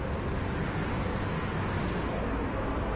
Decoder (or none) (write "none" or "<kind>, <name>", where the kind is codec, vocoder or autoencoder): none